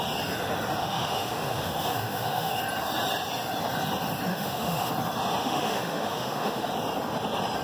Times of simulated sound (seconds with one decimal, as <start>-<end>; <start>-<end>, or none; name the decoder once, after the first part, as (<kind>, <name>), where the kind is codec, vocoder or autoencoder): 0.8-2.6 (autoencoder, DAC-VAE); 4.3-4.9; 5.4-6.7